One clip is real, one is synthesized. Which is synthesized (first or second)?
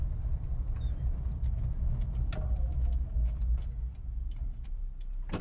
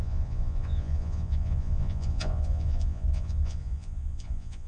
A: second